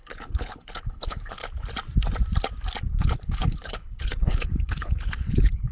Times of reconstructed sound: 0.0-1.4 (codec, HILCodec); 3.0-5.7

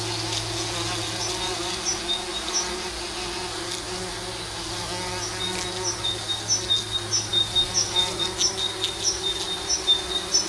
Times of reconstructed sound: none

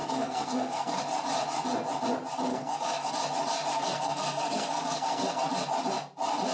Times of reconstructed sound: 0.0-1.0 (codec, SNAC); 2.5-3.1; 3.7-5.4

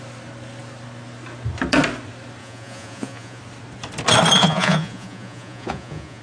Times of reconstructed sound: 2.4-3.4 (vocoder, Vocos); 4.4-6.2

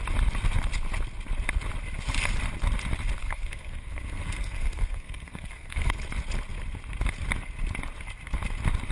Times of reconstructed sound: 3.2-6.0 (codec, SNAC)